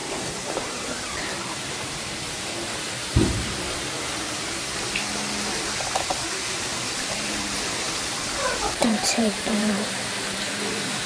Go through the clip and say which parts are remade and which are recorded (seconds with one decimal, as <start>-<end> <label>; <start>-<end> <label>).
0.0-3.5 remade; 3.5-6.7 recorded; 6.7-9.7 remade; 9.7-11.1 recorded